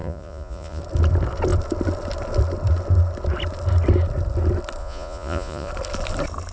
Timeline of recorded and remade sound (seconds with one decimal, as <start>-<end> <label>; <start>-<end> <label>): 0.0-0.8 remade; 0.8-4.8 recorded; 4.8-5.7 remade; 5.7-6.5 recorded